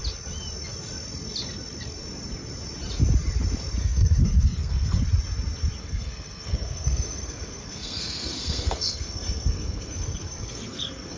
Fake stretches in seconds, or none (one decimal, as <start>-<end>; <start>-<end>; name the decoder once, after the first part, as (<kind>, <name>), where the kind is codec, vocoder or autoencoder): 3.8-5.0 (codec, SNAC); 5.8-11.2